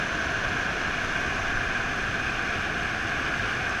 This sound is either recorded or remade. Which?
recorded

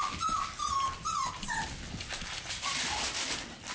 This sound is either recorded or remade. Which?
recorded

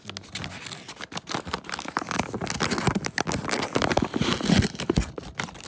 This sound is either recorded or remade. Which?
recorded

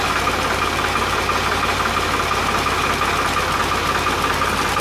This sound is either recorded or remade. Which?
recorded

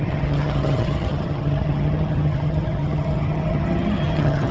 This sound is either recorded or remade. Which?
remade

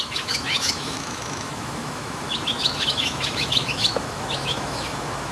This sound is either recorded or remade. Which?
remade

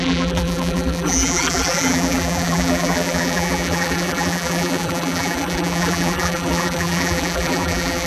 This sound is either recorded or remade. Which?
remade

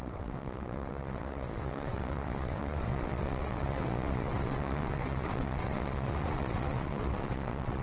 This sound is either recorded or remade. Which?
remade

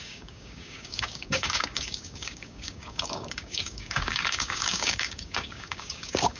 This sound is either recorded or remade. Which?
remade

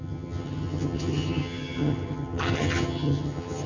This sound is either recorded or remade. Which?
remade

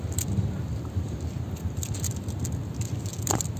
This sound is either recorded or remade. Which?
recorded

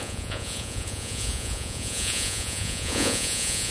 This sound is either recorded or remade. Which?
remade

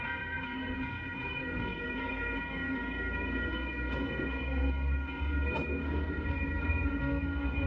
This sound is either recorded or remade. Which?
remade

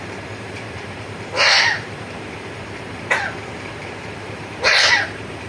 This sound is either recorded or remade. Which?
remade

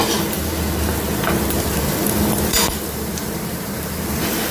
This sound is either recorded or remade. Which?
recorded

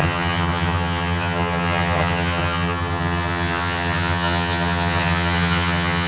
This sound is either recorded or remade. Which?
remade